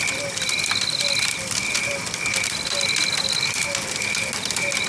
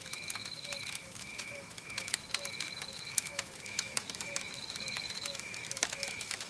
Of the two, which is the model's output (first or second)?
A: second